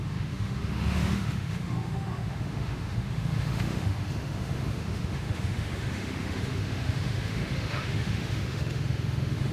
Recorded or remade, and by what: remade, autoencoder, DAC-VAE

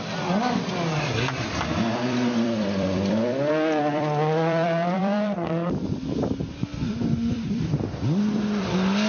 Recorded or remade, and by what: remade, vocoder, BigVGAN v2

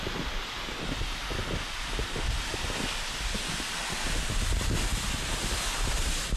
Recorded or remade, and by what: recorded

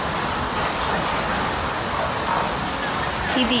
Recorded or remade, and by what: recorded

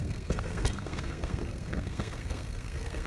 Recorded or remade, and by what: remade, codec, SNAC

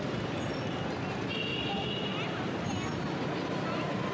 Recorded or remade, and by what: recorded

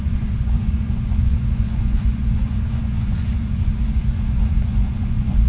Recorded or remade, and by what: remade, vocoder, Vocos